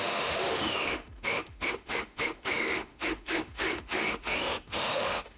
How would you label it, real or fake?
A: fake